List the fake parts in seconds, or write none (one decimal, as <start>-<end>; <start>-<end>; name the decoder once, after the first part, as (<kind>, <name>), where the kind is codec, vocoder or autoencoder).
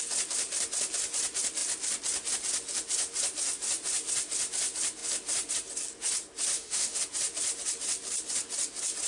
6.5-7.0 (autoencoder, DAC-VAE)